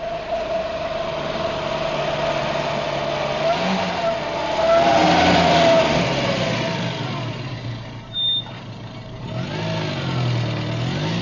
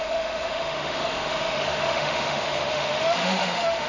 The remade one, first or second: second